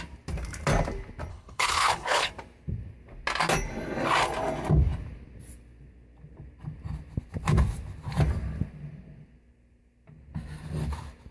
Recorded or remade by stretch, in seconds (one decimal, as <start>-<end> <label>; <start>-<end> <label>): 0.0-1.3 recorded; 1.3-2.3 remade; 2.3-11.3 recorded